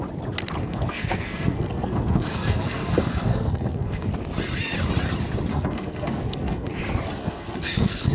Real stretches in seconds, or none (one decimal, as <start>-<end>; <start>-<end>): 0.0-0.6; 4.1-5.5; 6.8-7.2